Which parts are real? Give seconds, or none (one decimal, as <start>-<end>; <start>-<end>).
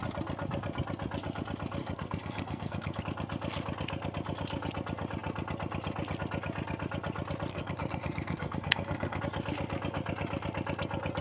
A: 0.0-1.8; 3.0-7.5; 9.2-11.2